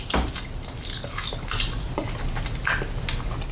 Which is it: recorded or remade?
recorded